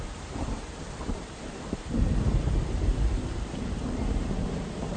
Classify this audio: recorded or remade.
remade